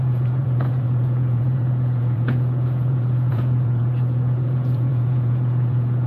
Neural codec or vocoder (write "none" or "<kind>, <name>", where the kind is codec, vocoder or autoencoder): vocoder, Vocos